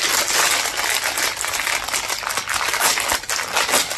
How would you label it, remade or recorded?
recorded